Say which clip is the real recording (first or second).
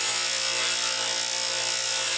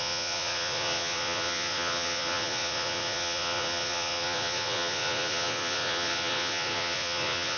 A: first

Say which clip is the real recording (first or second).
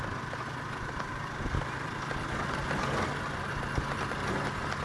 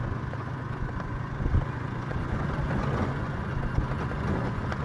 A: first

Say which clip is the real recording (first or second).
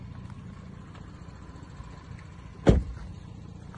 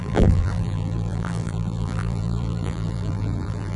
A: first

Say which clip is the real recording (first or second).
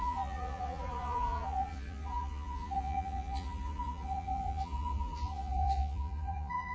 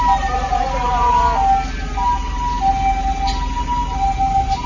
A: second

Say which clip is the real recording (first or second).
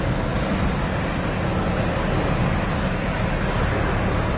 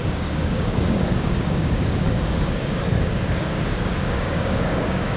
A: first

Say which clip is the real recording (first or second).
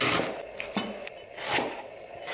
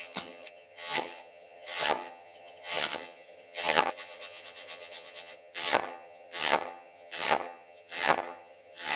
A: first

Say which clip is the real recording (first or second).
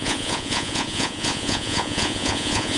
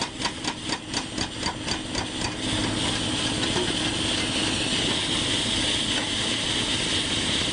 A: second